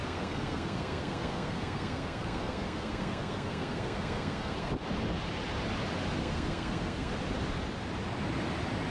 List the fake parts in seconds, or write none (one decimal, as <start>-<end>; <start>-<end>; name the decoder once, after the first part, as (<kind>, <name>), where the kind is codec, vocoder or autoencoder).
0.0-4.7 (codec, SNAC); 6.2-7.1